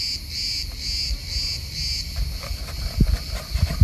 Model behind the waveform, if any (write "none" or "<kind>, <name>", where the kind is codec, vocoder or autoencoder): none